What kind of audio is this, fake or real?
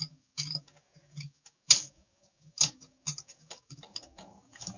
fake